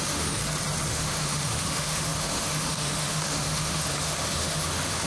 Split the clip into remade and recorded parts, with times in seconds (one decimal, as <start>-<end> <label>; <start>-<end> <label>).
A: 0.0-0.4 remade; 0.4-0.9 recorded; 0.9-5.1 remade